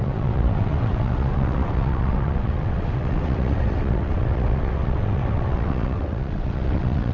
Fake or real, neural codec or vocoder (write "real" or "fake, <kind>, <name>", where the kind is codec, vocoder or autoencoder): fake, vocoder, WaveNeXt